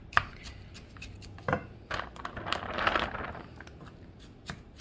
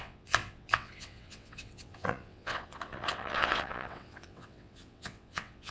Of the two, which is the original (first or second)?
first